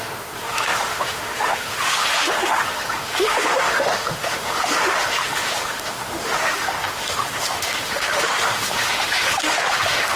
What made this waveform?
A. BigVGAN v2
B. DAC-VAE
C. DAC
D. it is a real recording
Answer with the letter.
B